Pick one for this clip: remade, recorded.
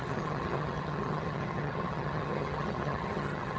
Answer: remade